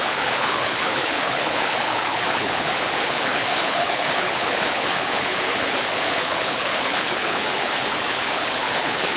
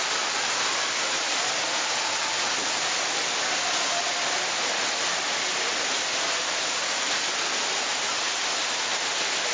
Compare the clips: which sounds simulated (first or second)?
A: first